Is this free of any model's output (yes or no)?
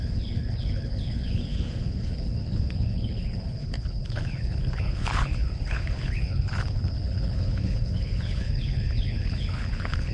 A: no